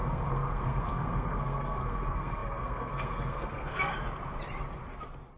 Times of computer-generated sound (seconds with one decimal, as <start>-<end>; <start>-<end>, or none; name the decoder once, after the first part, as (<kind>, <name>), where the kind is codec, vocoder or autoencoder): 0.0-3.9 (codec, SNAC)